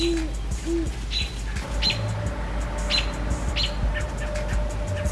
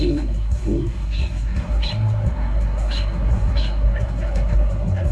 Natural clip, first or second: first